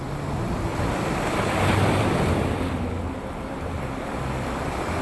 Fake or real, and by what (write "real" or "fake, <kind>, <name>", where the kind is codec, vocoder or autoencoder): fake, vocoder, BigVGAN v2